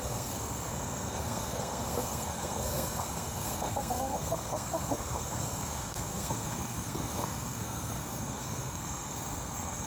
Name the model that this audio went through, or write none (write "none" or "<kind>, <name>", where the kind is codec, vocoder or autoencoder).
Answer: codec, SNAC